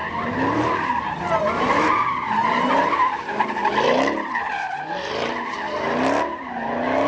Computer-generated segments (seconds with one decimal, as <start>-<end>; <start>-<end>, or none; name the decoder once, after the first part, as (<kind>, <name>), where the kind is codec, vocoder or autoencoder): none